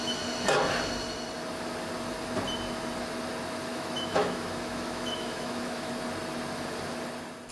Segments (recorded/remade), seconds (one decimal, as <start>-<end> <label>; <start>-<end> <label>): 0.0-3.7 recorded; 3.7-5.9 remade; 5.9-7.5 recorded